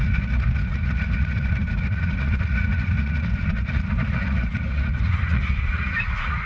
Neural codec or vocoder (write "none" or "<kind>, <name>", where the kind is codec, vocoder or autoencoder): vocoder, Vocos